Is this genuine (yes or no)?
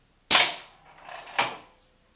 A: yes